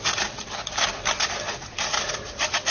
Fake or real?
real